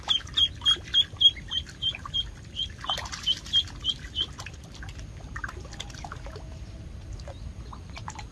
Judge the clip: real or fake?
real